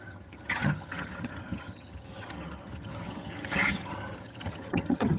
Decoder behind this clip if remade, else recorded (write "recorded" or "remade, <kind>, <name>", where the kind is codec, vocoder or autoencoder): remade, vocoder, HiFi-GAN